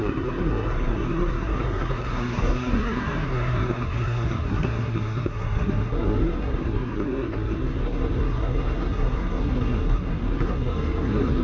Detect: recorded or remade remade